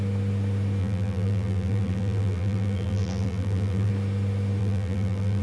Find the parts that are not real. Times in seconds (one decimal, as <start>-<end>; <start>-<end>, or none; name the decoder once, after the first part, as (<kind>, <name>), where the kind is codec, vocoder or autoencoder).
0.8-3.9 (vocoder, BigVGAN v2); 4.6-5.4